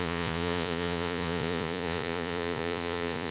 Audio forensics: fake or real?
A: fake